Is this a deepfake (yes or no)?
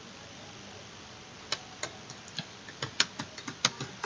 no